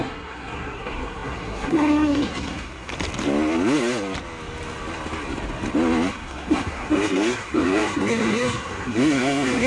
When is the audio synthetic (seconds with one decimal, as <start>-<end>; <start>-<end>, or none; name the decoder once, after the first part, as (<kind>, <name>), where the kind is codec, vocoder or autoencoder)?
0.0-2.9 (codec, SNAC); 6.1-9.7